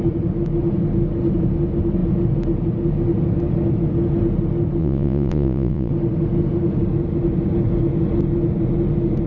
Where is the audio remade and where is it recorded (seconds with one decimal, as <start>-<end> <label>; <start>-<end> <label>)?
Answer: 0.0-4.8 recorded; 4.8-5.9 remade; 5.9-9.3 recorded